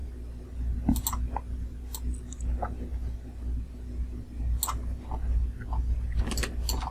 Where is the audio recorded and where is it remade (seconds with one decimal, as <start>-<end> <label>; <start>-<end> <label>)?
0.0-6.9 recorded